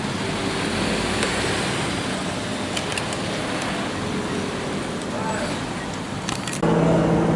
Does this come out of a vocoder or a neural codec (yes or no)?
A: no